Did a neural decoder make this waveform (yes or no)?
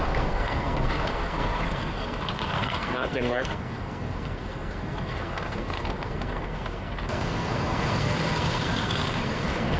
yes